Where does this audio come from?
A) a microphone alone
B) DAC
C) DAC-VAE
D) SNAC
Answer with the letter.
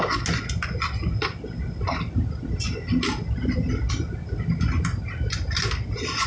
A